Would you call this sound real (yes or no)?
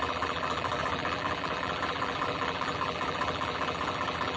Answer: no